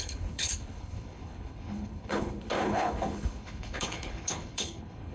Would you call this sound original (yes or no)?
no